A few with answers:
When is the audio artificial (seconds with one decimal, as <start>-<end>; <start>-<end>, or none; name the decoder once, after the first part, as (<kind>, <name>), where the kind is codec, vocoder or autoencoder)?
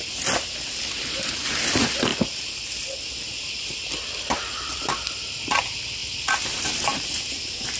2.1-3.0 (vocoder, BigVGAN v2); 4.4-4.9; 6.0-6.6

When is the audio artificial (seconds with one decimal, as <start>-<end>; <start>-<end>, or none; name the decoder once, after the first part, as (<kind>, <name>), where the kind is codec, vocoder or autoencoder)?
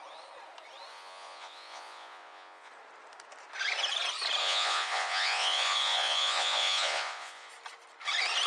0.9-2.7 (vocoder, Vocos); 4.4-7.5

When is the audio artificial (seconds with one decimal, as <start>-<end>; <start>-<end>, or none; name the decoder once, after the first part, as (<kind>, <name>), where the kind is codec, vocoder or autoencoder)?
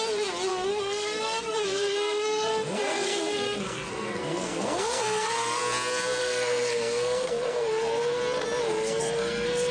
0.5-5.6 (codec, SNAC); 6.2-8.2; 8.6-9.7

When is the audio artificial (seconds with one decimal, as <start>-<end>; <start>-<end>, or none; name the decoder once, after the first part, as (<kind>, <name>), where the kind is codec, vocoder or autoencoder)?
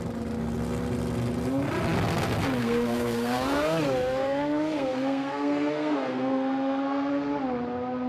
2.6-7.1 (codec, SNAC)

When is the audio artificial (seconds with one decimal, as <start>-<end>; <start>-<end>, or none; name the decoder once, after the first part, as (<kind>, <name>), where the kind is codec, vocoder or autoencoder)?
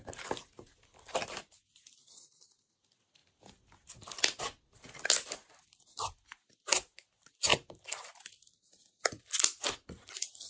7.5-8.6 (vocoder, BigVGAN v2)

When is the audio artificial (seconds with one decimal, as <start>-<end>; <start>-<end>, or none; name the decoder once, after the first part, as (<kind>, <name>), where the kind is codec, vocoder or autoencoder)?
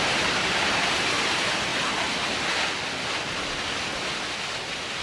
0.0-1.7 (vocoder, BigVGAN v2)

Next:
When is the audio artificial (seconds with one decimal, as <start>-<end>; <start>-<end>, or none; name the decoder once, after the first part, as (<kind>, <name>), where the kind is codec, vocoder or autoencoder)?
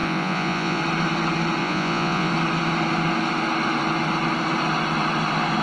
0.0-0.8 (vocoder, Vocos); 1.6-2.3